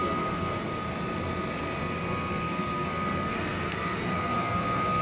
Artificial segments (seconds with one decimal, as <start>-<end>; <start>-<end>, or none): 0.0-0.8; 2.3-5.0